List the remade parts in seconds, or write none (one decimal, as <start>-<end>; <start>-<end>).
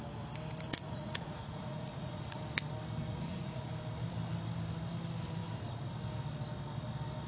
0.7-2.4; 3.1-3.7